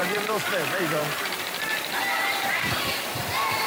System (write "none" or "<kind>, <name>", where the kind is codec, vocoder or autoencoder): vocoder, BigVGAN v2